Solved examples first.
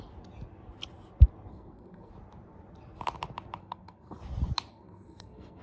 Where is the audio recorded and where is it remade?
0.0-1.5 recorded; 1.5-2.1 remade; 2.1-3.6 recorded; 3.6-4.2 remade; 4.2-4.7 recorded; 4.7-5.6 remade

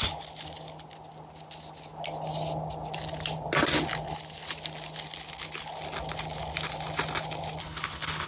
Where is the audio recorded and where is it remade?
0.0-7.6 recorded; 7.6-8.3 remade

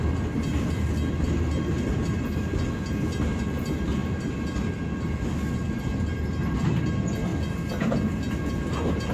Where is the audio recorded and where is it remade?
0.0-9.1 recorded

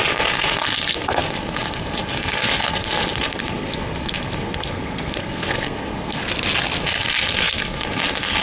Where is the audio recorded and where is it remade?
0.0-6.2 remade; 6.2-6.8 recorded; 6.8-8.4 remade

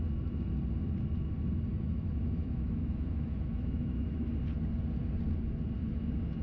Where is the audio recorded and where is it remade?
0.0-1.7 recorded; 1.7-4.3 remade; 4.3-6.4 recorded

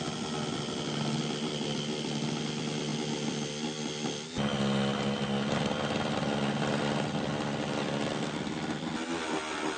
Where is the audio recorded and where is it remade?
0.0-9.8 recorded

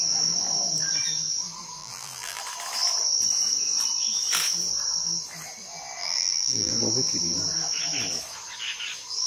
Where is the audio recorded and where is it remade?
0.0-1.8 recorded; 1.8-2.4 remade; 2.4-6.0 recorded; 6.0-6.7 remade; 6.7-9.3 recorded